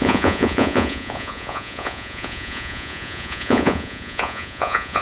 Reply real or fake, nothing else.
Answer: fake